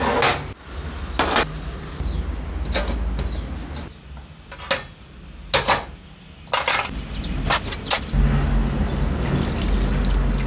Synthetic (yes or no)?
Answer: no